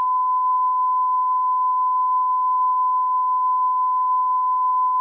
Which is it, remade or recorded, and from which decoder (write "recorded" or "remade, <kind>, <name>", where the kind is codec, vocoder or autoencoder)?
remade, codec, SNAC